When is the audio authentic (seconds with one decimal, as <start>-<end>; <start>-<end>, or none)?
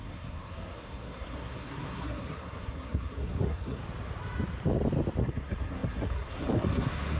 3.8-5.2